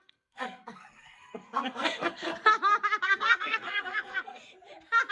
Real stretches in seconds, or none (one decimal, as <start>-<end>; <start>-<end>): 2.3-3.0; 4.4-5.1